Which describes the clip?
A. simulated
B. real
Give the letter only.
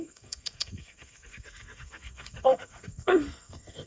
A